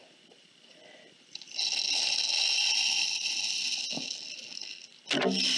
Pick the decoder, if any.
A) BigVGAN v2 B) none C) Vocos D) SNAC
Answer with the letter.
B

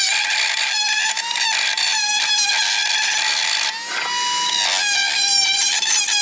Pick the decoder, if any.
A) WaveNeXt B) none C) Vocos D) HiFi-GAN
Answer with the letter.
B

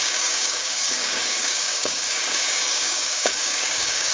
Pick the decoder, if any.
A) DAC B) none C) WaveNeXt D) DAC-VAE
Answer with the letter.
A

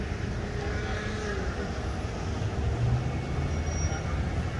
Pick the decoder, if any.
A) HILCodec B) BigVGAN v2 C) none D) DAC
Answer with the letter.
C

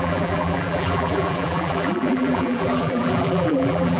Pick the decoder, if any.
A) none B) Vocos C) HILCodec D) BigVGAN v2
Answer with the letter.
D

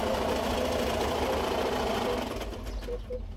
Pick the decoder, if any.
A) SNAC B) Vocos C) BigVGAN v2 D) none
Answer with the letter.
D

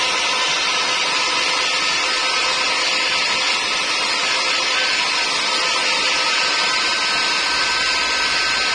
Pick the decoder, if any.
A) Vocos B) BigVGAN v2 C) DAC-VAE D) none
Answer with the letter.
D